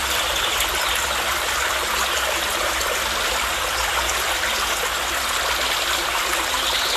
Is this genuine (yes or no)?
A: yes